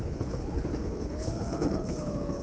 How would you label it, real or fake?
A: fake